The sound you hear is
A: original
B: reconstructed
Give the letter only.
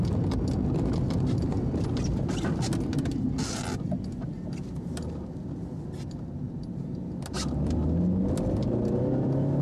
A